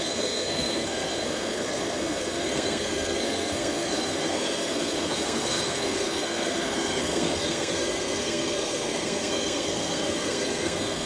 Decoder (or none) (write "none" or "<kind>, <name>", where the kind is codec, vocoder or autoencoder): codec, SNAC